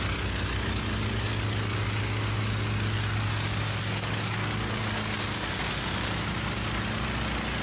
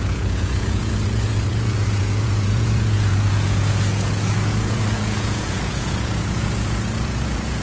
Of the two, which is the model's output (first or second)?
second